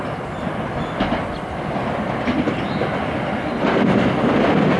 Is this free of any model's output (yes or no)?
yes